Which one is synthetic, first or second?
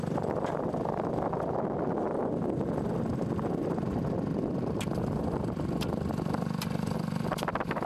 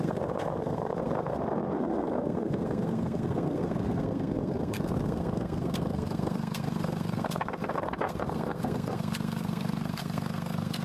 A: second